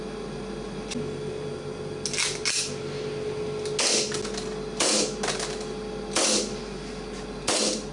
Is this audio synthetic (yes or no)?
no